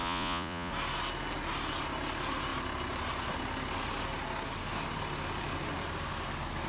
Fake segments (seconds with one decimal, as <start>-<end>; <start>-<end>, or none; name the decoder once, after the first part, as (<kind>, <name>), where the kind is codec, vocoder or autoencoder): 0.0-0.7 (vocoder, Vocos)